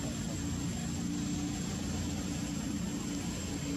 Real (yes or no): no